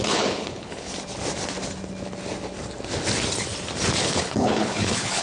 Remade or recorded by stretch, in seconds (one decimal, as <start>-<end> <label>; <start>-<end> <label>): 0.0-0.9 remade; 0.9-4.0 recorded; 4.0-5.2 remade